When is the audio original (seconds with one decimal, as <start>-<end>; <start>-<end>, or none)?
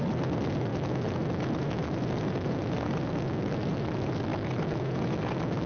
0.0-5.7